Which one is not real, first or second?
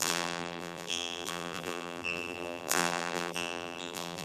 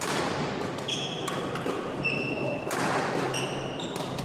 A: first